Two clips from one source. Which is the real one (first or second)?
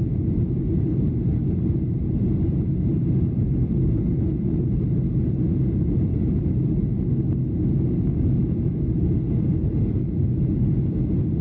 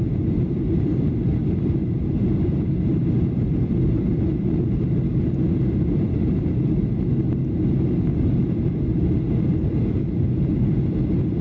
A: first